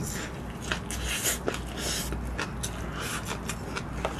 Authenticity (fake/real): real